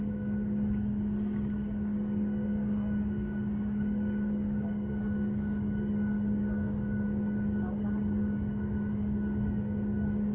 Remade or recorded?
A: remade